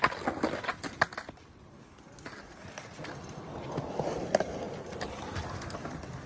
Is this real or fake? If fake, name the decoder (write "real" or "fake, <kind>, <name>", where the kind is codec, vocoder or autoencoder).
real